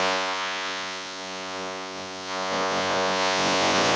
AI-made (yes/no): yes